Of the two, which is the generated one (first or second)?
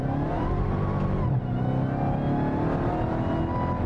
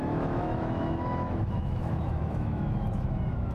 second